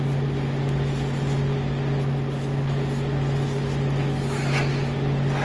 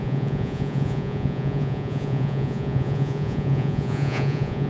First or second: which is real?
first